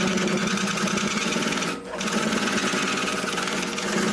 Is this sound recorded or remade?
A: remade